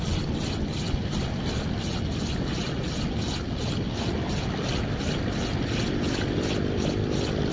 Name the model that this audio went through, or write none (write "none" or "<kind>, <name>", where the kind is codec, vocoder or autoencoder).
none